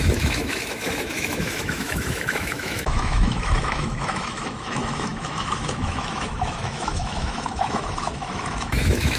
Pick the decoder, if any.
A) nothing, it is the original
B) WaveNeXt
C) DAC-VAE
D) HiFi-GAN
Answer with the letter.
C